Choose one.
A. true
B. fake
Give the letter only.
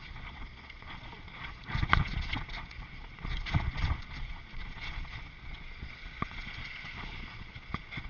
B